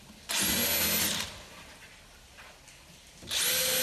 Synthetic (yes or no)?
no